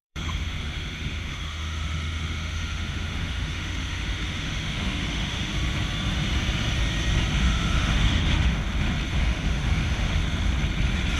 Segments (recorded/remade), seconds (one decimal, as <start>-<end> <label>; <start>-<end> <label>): 0.0-5.5 remade; 5.5-7.3 recorded; 7.3-8.6 remade; 8.6-9.2 recorded; 9.2-10.2 remade; 10.2-11.2 recorded